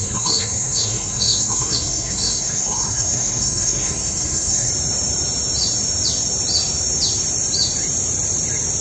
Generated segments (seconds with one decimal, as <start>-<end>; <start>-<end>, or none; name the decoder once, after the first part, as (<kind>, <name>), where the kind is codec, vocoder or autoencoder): 0.0-4.7 (codec, SNAC)